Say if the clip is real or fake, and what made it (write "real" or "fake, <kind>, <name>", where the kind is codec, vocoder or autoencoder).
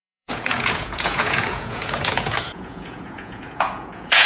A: fake, vocoder, Vocos